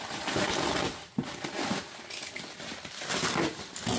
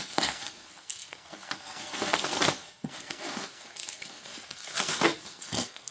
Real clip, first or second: first